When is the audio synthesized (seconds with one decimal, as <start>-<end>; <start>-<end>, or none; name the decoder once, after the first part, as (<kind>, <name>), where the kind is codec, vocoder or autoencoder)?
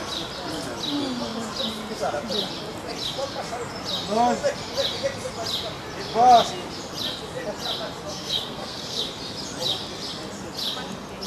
8.1-9.0 (codec, SNAC)